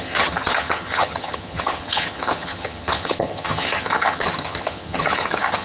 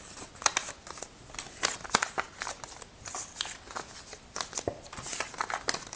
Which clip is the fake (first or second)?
first